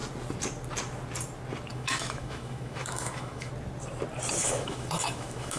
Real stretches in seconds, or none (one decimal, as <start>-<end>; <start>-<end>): 0.0-1.7; 3.5-4.4